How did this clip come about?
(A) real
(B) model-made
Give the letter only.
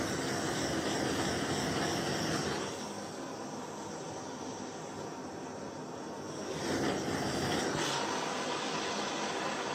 A